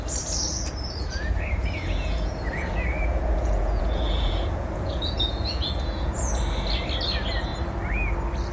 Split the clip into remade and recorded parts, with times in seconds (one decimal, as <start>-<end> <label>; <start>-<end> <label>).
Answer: 0.0-1.0 recorded; 1.0-6.1 remade; 6.1-8.5 recorded